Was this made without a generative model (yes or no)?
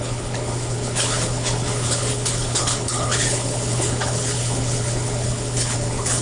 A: no